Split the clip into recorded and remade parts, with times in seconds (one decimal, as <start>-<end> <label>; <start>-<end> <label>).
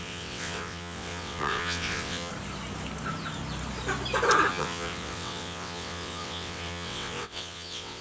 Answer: 0.0-2.3 remade; 2.3-4.5 recorded; 4.5-8.0 remade